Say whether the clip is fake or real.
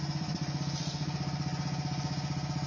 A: real